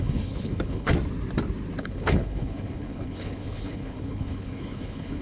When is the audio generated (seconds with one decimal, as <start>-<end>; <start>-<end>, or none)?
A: 0.0-0.9; 1.8-5.2